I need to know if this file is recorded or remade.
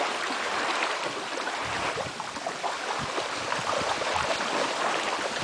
recorded